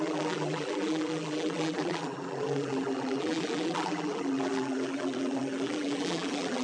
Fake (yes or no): yes